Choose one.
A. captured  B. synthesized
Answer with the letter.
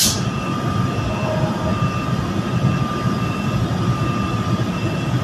A